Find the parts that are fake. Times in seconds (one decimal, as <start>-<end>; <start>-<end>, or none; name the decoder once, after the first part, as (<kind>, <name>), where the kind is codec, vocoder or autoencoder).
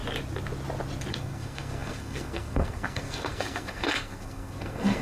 1.1-5.0 (codec, SNAC)